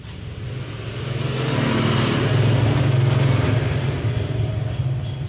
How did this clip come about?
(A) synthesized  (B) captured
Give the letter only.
B